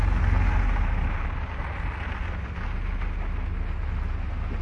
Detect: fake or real real